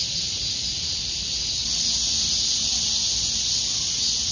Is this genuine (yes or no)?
yes